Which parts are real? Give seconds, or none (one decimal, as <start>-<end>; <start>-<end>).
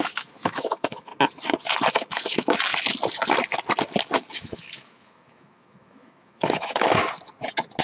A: 1.1-1.9; 2.7-4.3; 7.0-7.8